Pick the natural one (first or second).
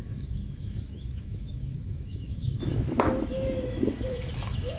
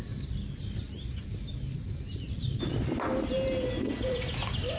second